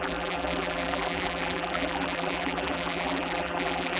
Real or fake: fake